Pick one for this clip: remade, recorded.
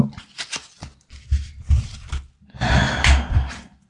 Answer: recorded